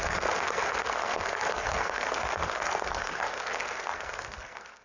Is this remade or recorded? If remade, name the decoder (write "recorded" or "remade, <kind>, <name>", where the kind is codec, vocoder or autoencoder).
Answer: remade, codec, SNAC